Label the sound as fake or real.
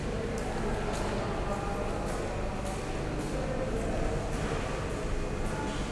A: real